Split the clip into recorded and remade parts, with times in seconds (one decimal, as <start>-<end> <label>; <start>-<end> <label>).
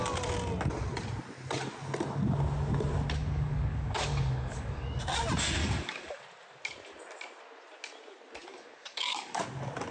0.0-3.2 recorded; 3.2-5.0 remade; 5.0-5.6 recorded; 5.6-6.2 remade; 6.2-8.4 recorded; 8.4-9.4 remade; 9.4-9.9 recorded